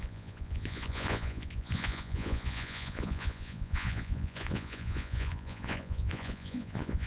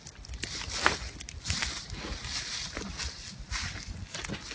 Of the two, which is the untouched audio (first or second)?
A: second